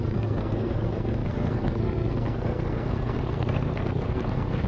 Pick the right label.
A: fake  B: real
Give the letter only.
A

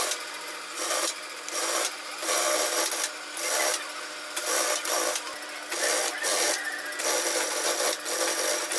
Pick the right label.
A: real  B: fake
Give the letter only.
A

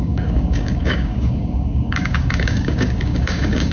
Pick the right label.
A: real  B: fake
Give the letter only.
B